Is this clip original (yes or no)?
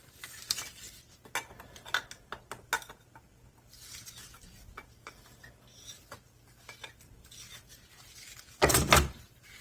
yes